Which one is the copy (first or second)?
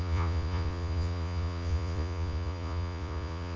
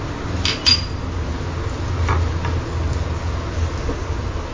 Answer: first